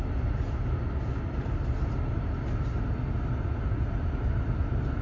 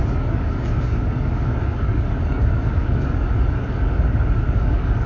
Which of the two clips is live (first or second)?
first